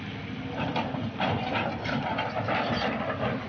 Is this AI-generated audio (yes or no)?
no